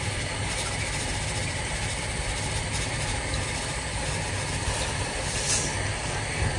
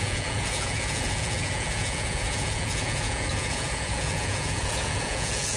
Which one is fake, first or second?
second